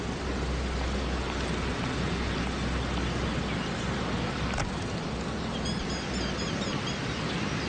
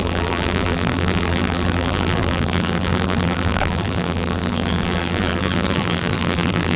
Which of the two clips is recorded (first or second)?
first